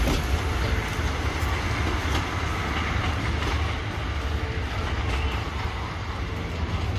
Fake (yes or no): no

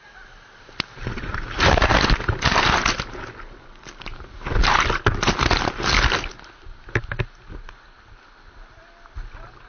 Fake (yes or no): no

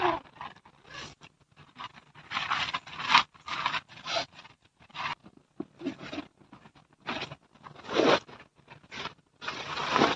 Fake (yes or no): no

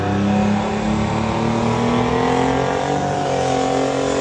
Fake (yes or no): no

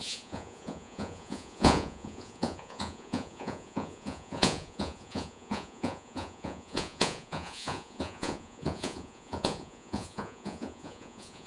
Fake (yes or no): yes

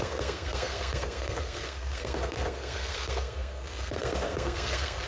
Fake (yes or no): yes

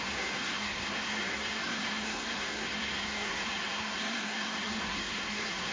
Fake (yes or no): yes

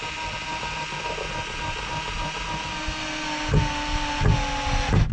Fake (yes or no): no